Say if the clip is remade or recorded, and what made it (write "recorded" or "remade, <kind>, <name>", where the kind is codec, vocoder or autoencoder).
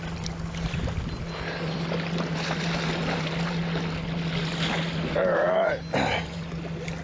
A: recorded